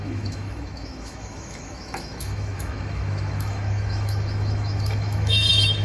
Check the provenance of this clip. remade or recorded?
remade